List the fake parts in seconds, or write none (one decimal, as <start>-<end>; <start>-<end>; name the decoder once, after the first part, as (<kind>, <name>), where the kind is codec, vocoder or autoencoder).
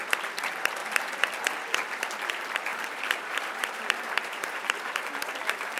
0.8-1.3 (vocoder, BigVGAN v2); 2.7-5.8